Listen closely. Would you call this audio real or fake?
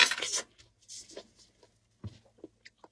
real